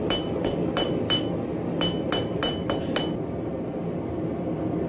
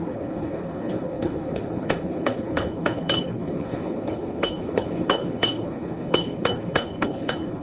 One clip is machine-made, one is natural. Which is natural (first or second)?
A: first